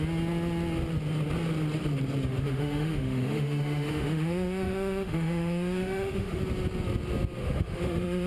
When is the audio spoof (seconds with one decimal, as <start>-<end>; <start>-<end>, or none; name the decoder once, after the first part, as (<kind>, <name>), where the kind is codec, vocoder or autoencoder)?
2.2-6.4 (autoencoder, DAC-VAE); 7.4-8.3